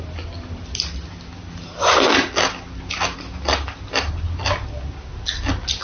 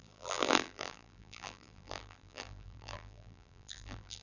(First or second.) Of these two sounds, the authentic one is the first